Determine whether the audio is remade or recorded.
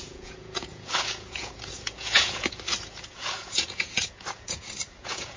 remade